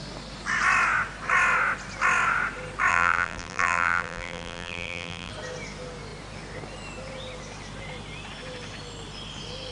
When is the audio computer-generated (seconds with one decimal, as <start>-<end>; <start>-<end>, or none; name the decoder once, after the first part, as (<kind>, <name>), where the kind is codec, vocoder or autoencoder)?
2.9-5.3 (vocoder, BigVGAN v2)